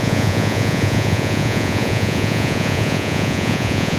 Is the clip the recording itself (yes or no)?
no